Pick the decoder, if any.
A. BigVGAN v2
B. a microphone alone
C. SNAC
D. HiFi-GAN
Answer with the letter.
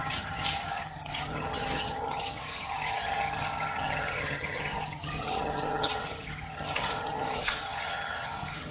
D